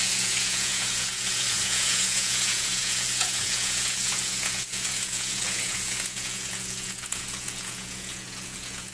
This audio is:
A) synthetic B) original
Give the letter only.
A